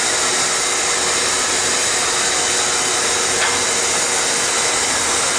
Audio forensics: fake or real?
real